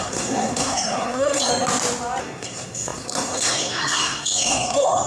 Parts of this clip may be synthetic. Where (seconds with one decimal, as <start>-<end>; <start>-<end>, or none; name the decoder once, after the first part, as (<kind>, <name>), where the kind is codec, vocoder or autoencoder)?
0.0-1.5 (codec, SNAC); 2.2-5.1